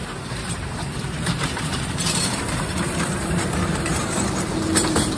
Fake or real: fake